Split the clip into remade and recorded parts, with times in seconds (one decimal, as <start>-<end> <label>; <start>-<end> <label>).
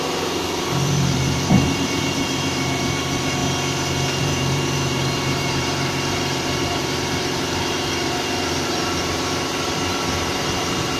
0.0-3.4 remade; 3.4-4.2 recorded; 4.2-11.0 remade